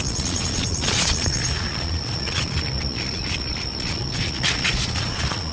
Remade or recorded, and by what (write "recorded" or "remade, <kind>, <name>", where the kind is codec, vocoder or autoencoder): remade, vocoder, Vocos